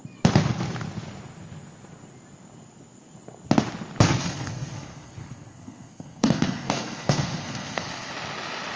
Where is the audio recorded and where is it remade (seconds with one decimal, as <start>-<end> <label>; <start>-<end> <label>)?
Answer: 0.0-4.2 recorded; 4.2-8.1 remade; 8.1-8.8 recorded